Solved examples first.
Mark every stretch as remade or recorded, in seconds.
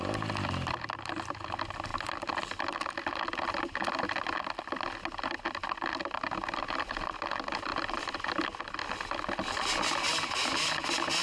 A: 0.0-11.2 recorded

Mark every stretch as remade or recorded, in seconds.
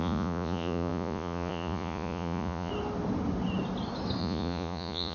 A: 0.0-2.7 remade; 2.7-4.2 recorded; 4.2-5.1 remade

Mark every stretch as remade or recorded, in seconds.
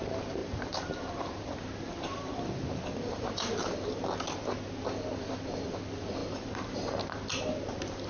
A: 0.0-0.4 recorded; 0.4-2.4 remade; 2.4-3.1 recorded; 3.1-3.9 remade; 3.9-6.2 recorded; 6.2-6.9 remade; 6.9-8.1 recorded